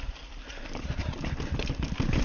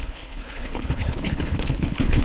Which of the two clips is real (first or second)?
first